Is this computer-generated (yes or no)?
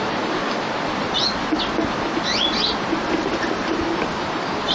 no